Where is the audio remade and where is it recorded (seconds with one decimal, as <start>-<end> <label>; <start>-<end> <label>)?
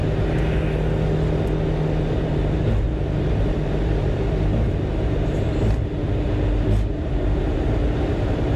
0.0-2.1 recorded; 2.1-6.0 remade; 6.0-6.9 recorded; 6.9-8.6 remade